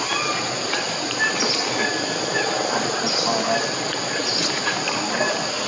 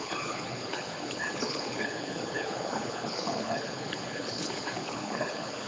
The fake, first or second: second